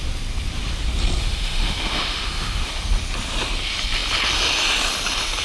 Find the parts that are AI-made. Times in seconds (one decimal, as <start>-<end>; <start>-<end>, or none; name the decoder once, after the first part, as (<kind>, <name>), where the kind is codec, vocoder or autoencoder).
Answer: 1.2-2.7 (autoencoder, DAC-VAE)